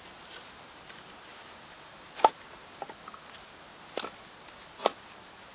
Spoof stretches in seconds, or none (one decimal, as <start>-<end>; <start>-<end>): 1.3-2.7